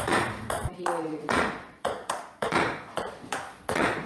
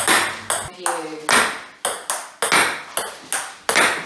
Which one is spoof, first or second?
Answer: first